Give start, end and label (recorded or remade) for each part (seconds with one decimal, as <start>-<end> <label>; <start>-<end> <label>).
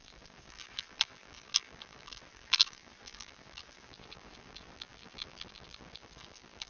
0.0-6.7 remade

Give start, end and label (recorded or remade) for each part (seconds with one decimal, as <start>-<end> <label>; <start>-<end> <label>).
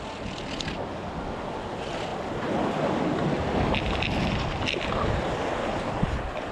0.0-6.5 recorded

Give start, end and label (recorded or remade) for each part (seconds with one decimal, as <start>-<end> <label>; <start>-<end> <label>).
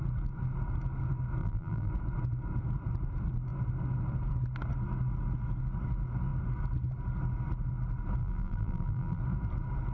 0.0-1.4 recorded; 1.4-1.9 remade; 1.9-8.2 recorded; 8.2-9.2 remade; 9.2-9.9 recorded